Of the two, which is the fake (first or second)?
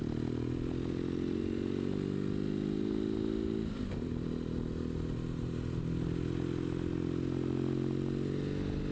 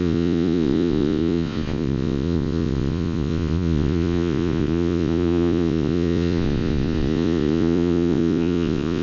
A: second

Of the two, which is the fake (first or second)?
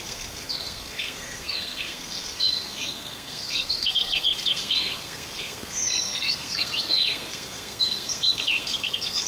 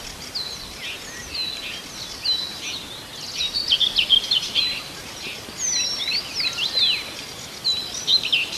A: first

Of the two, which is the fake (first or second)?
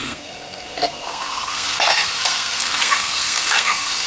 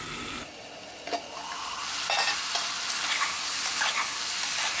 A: first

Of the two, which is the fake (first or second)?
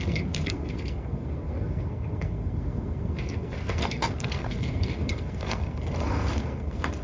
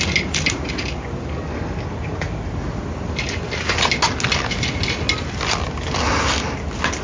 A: first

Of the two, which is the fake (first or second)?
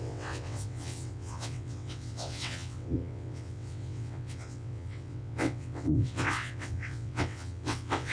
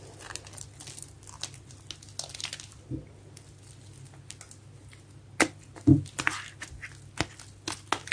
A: first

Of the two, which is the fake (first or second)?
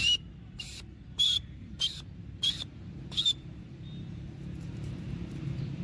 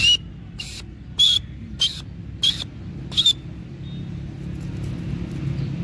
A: first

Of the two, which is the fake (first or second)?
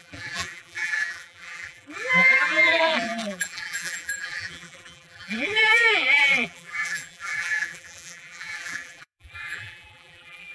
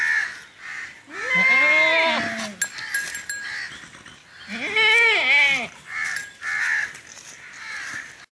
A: first